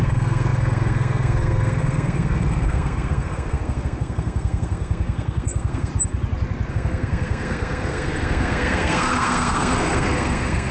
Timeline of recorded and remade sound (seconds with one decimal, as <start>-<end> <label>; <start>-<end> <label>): 0.0-5.9 remade; 5.9-6.7 recorded; 6.7-10.7 remade